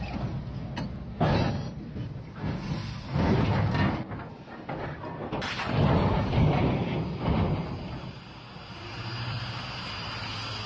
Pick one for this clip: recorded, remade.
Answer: recorded